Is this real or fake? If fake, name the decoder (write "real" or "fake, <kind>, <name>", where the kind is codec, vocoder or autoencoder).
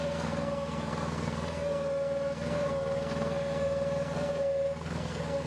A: fake, codec, SNAC